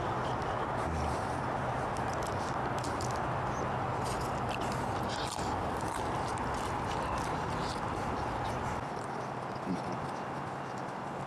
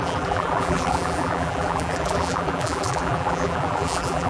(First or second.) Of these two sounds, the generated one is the second